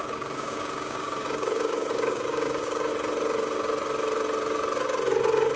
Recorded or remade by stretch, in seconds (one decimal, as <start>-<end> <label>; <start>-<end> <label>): 0.0-2.9 remade; 2.9-5.6 recorded